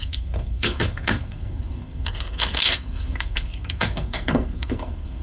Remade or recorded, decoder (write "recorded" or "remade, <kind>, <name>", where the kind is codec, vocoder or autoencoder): remade, codec, SNAC